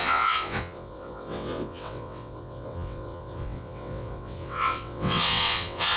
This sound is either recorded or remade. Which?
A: remade